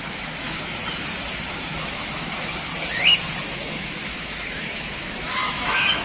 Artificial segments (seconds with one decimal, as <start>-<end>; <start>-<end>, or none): 0.0-0.8; 1.5-2.7; 3.4-6.0